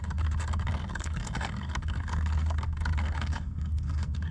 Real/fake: fake